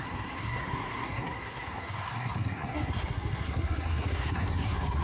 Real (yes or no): no